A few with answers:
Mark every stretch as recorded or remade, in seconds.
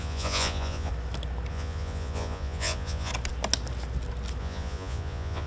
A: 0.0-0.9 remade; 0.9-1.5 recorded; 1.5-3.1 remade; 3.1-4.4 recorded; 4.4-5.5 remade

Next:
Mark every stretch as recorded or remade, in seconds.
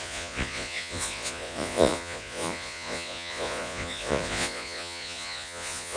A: 0.0-6.0 remade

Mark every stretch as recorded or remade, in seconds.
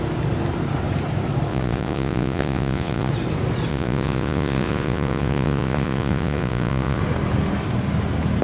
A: 0.0-1.5 recorded; 1.5-3.1 remade; 3.1-3.7 recorded; 3.7-7.0 remade; 7.0-8.4 recorded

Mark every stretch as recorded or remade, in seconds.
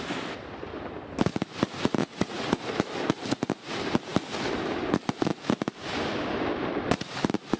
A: 0.0-2.0 recorded; 2.0-2.6 remade; 2.6-7.6 recorded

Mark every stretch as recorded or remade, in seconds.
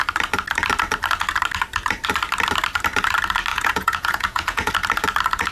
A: 0.0-3.5 recorded; 3.5-4.7 remade; 4.7-5.5 recorded